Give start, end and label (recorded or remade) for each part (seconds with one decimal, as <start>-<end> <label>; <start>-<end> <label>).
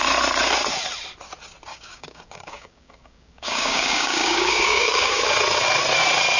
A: 0.0-1.7 recorded; 1.7-5.2 remade; 5.2-6.4 recorded